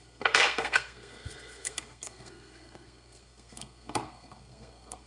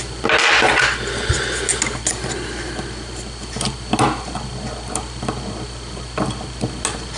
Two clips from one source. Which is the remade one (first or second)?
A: first